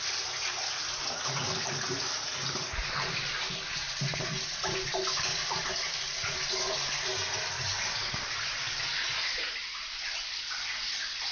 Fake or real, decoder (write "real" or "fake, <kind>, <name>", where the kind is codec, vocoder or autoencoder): real